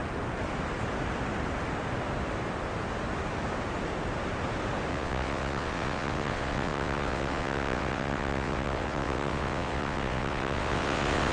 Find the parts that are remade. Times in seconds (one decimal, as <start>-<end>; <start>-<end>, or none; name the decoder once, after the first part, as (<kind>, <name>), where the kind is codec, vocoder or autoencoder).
4.9-11.3 (vocoder, WaveNeXt)